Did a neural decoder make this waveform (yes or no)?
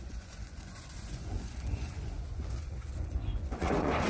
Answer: yes